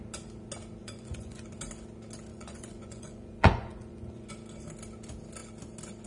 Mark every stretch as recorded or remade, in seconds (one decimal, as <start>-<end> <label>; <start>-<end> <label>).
0.0-0.8 recorded; 0.8-1.5 remade; 1.5-2.3 recorded; 2.3-4.3 remade; 4.3-6.1 recorded